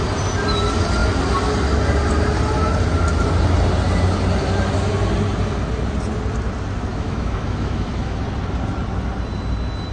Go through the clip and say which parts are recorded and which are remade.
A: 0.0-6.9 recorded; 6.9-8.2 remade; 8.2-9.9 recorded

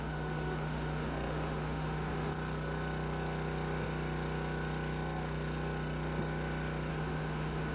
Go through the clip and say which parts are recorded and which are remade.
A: 0.0-2.3 remade; 2.3-6.9 recorded; 6.9-7.7 remade

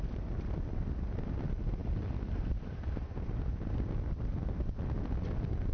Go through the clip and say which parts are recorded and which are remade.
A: 0.0-5.7 recorded

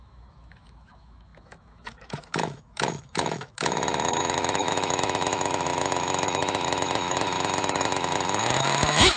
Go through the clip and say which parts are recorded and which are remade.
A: 0.0-9.2 remade

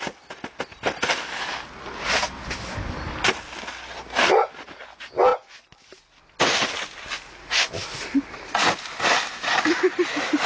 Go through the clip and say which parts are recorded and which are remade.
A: 0.0-10.5 recorded

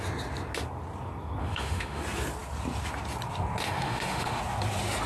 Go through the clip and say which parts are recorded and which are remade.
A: 0.0-1.4 recorded; 1.4-2.0 remade; 2.0-3.6 recorded; 3.6-4.4 remade; 4.4-5.1 recorded

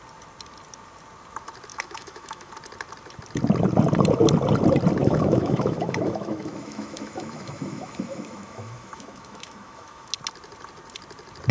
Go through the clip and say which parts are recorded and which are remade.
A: 0.0-1.7 recorded; 1.7-2.5 remade; 2.5-5.0 recorded; 5.0-10.1 remade; 10.1-11.5 recorded